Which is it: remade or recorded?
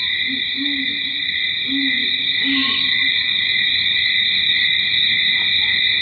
recorded